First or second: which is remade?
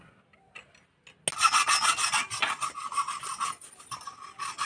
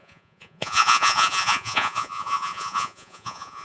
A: second